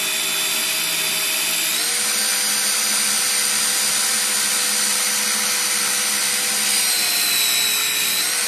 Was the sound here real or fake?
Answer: real